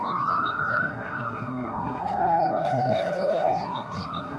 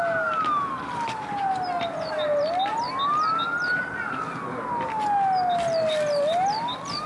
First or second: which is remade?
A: first